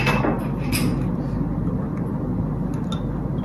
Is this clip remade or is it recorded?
recorded